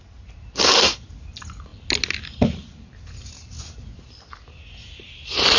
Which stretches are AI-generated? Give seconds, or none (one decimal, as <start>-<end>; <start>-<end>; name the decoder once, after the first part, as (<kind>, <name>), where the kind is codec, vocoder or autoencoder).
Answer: none